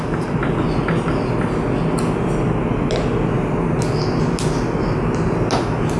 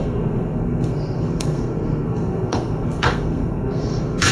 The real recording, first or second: first